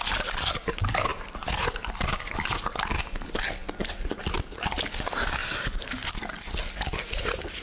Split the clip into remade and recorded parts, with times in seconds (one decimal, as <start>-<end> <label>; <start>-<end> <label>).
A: 0.0-1.1 recorded; 1.1-1.8 remade; 1.8-5.4 recorded; 5.4-6.1 remade; 6.1-7.6 recorded